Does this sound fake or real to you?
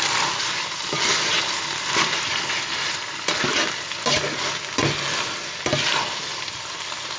real